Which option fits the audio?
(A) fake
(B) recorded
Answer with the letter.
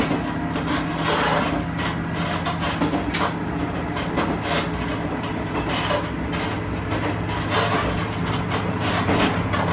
B